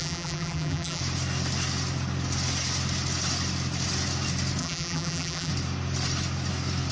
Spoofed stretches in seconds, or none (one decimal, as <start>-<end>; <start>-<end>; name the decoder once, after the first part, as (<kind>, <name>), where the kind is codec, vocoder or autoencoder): 0.0-1.0 (vocoder, BigVGAN v2); 4.6-5.5